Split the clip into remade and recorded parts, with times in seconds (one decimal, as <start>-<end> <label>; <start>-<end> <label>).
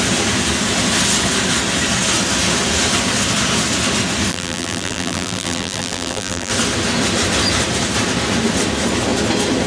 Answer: 0.0-4.3 recorded; 4.3-6.5 remade; 6.5-9.7 recorded